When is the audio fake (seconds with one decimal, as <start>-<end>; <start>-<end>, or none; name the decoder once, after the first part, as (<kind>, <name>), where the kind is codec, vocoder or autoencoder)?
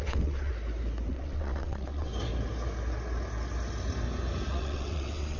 0.0-0.5 (vocoder, WaveNeXt); 1.1-2.1; 4.5-5.4